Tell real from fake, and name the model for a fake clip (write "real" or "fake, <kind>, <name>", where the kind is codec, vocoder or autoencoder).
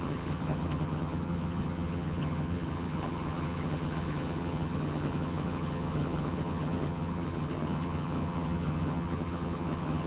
fake, vocoder, HiFi-GAN